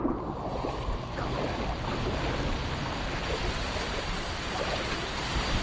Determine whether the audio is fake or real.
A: fake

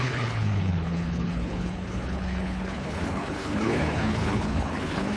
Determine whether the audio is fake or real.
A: fake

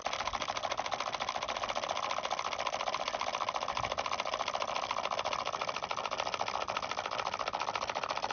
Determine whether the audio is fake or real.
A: real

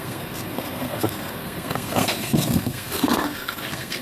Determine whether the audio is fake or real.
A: fake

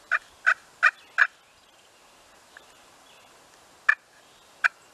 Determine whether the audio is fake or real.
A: real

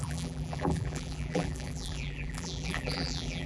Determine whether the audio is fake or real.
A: fake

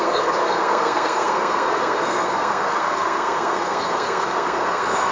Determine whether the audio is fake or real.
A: fake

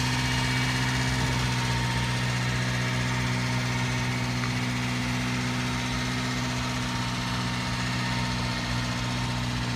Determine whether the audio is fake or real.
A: real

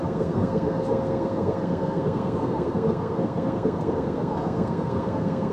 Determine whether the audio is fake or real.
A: fake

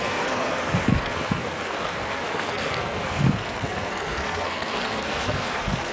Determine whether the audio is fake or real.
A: fake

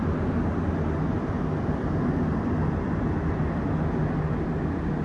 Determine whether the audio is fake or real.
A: real